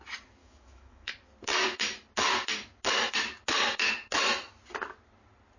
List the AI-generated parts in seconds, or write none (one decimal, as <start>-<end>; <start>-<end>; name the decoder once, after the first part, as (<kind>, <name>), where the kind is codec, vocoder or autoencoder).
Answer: 0.4-1.1 (autoencoder, DAC-VAE)